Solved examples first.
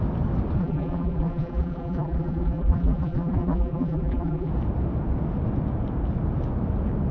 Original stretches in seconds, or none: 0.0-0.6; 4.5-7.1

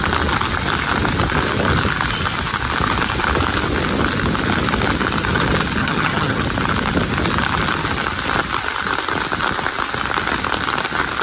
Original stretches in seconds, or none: 0.0-5.8; 6.4-11.2

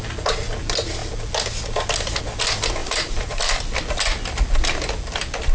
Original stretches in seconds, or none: 0.0-2.8; 3.6-5.5

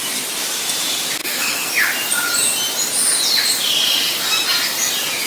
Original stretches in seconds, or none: 0.0-1.2; 1.7-5.3